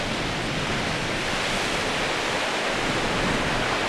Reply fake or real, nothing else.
real